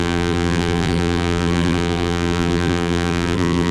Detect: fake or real fake